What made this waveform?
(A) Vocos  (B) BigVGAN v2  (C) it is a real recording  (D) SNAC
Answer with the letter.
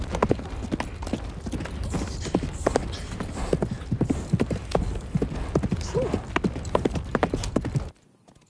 C